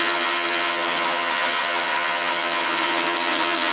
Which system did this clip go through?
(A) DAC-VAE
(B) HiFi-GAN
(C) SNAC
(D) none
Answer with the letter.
B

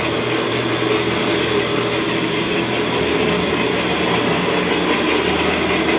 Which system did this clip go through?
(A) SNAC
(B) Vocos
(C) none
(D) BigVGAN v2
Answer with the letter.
C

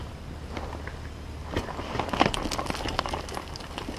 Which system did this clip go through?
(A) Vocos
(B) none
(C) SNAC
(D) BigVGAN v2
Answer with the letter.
B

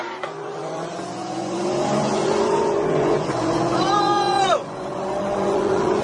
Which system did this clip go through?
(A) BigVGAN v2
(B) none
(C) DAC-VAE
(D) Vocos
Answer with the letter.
D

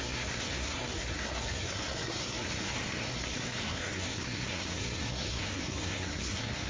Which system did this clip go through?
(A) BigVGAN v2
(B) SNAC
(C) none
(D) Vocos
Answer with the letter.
B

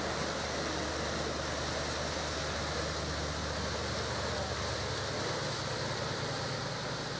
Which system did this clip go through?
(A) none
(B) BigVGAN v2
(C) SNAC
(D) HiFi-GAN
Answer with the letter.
A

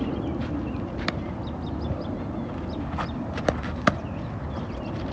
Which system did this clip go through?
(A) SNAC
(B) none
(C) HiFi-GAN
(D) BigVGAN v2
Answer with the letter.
D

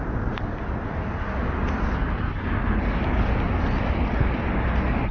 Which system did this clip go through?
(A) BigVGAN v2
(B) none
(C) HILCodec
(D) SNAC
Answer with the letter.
B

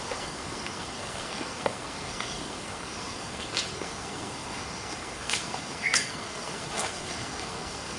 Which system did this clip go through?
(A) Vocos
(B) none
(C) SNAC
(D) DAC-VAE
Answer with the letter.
C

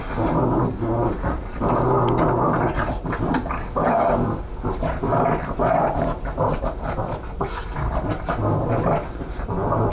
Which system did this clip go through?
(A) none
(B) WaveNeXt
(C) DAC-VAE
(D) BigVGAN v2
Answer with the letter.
A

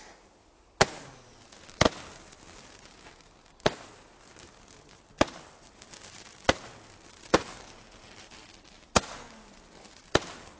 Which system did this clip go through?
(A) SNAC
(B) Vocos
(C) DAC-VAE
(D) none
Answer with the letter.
D